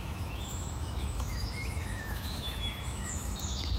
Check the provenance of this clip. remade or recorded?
remade